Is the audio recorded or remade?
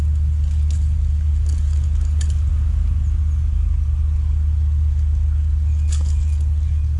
recorded